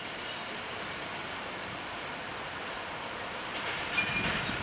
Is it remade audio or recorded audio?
remade